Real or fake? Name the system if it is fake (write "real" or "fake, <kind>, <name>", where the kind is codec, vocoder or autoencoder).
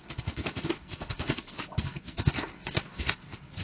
fake, codec, SNAC